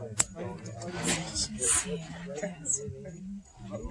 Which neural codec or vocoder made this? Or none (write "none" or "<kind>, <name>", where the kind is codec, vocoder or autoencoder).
none